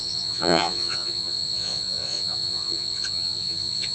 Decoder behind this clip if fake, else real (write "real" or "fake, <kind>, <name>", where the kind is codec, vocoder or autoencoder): fake, vocoder, Vocos